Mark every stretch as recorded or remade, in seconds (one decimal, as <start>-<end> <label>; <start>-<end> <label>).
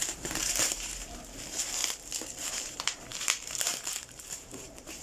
0.0-1.8 remade; 1.8-2.5 recorded; 2.5-5.0 remade